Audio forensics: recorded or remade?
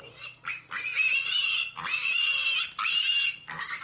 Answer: recorded